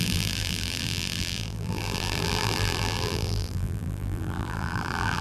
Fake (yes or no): yes